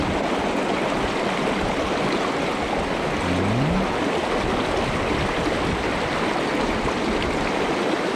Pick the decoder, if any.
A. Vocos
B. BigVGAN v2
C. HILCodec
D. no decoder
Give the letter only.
D